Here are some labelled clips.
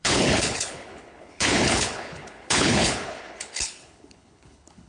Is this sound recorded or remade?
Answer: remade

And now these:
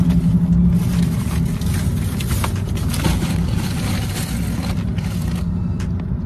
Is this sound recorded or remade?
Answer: recorded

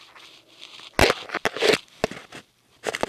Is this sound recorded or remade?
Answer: recorded